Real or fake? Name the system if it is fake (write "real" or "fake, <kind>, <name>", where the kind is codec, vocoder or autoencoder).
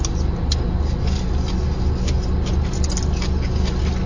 real